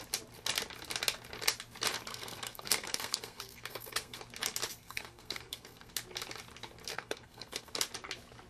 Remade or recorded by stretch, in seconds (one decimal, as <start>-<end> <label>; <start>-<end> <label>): 0.0-2.1 recorded; 2.1-4.2 remade; 4.2-4.8 recorded; 4.8-5.9 remade; 5.9-6.9 recorded; 6.9-7.7 remade; 7.7-8.5 recorded